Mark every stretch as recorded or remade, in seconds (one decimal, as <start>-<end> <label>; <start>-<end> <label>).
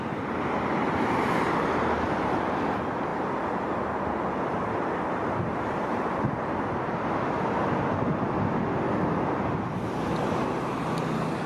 0.0-11.5 recorded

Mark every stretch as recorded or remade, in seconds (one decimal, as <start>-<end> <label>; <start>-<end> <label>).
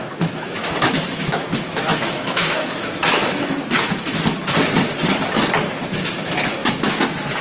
0.0-4.4 remade; 4.4-5.6 recorded; 5.6-7.4 remade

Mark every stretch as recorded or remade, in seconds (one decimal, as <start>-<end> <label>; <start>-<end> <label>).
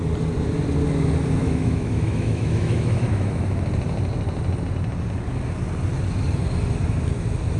0.0-1.4 recorded; 1.4-3.6 remade; 3.6-7.6 recorded